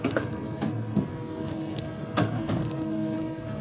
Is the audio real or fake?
fake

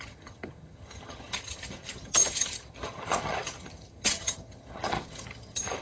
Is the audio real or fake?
fake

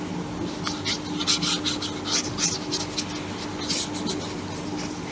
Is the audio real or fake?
real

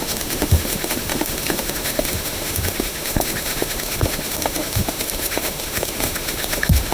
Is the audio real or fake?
fake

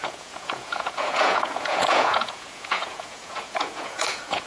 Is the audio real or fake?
fake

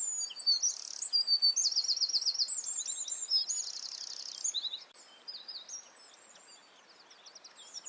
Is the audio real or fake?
real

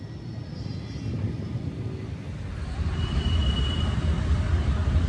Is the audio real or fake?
real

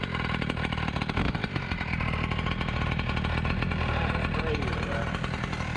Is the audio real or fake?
real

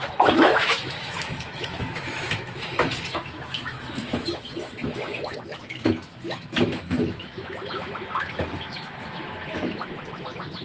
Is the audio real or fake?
fake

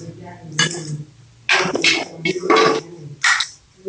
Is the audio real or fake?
real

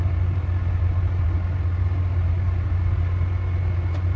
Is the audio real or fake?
real